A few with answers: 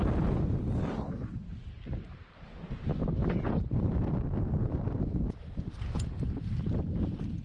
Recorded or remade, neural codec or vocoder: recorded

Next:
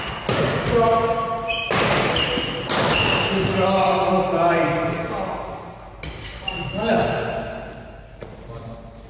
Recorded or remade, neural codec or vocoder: recorded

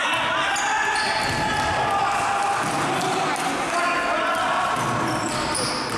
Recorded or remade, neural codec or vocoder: recorded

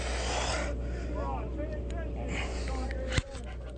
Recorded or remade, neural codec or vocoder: recorded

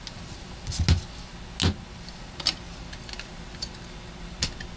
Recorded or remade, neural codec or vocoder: recorded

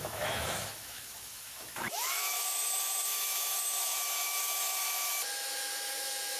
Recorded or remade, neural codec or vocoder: remade, autoencoder, DAC-VAE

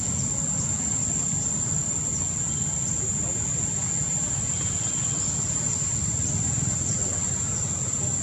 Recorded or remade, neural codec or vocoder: recorded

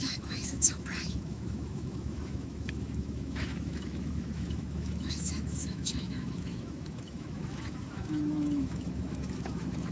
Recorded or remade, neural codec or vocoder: remade, autoencoder, DAC-VAE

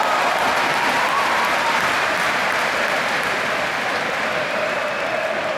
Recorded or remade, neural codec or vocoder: recorded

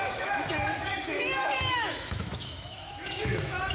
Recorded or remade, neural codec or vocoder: remade, autoencoder, DAC-VAE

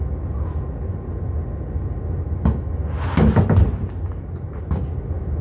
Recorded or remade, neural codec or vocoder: recorded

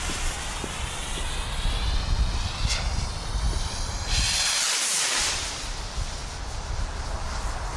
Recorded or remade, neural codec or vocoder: recorded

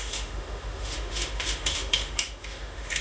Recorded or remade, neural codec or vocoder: remade, autoencoder, DAC-VAE